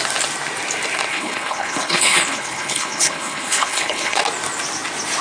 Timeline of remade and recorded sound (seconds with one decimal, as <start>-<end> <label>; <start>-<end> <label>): 0.0-1.1 recorded; 1.1-4.2 remade; 4.2-5.2 recorded